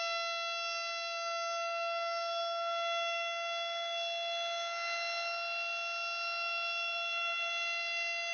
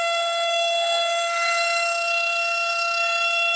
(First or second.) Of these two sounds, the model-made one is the second